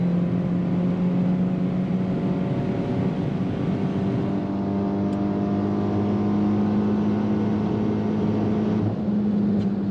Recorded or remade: recorded